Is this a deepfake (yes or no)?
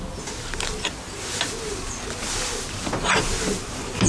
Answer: no